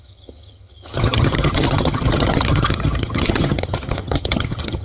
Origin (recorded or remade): remade